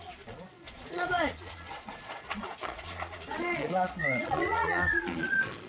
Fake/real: fake